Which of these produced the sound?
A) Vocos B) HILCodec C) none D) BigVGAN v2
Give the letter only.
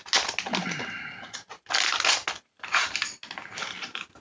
C